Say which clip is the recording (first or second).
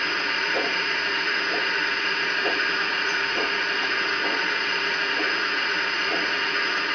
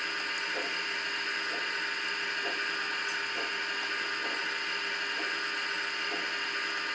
second